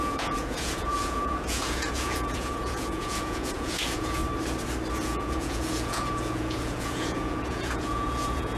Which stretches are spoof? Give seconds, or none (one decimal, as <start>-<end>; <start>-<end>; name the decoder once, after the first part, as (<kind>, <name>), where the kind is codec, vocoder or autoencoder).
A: 0.0-4.2 (vocoder, Vocos); 4.9-8.6